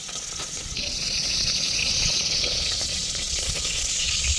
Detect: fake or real fake